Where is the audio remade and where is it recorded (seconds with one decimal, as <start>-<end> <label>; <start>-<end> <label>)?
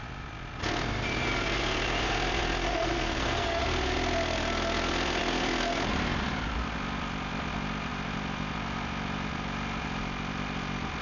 0.0-2.7 recorded; 2.7-3.6 remade; 3.6-11.0 recorded